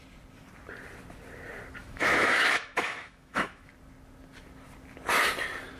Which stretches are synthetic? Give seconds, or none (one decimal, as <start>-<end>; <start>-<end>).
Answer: 1.8-3.7